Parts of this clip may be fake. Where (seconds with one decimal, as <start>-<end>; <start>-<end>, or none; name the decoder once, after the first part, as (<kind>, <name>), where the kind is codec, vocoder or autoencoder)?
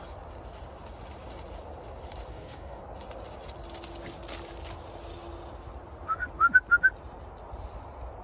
2.3-2.8 (codec, DAC)